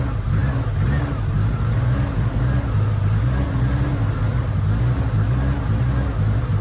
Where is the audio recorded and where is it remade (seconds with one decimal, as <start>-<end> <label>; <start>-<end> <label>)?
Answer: 0.0-6.6 recorded

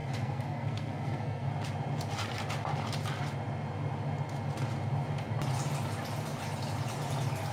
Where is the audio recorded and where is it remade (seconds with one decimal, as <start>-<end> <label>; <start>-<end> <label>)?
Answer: 0.0-1.5 remade; 1.5-7.5 recorded

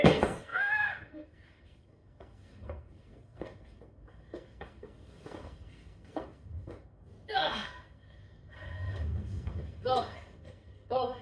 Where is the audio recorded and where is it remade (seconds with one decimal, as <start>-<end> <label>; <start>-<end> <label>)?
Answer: 0.0-11.2 remade